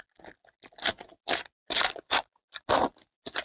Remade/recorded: recorded